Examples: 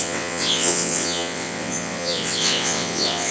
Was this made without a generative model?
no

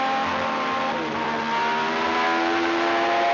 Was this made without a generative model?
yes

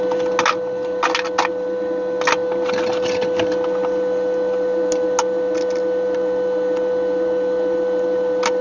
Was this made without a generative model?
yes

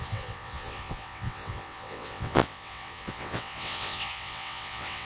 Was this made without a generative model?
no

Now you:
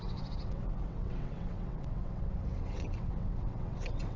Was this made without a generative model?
no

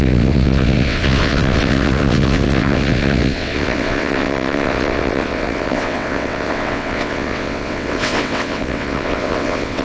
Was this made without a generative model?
no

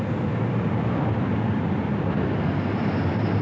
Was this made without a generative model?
yes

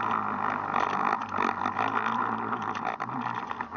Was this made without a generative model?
yes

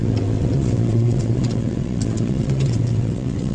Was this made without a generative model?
no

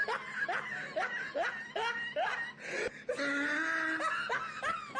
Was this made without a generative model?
yes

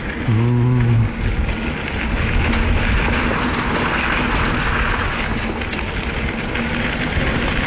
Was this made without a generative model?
yes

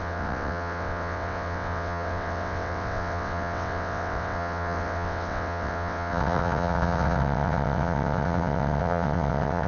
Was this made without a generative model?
no